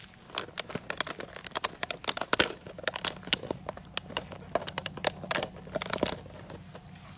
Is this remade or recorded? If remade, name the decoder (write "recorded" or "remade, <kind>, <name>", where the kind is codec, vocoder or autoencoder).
recorded